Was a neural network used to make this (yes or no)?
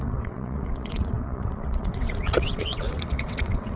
yes